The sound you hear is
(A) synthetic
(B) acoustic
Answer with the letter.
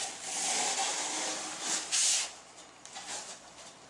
B